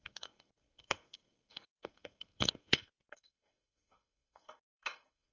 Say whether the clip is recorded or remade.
remade